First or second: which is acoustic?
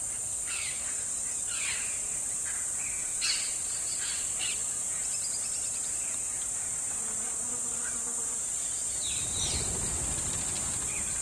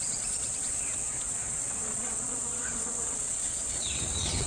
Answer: first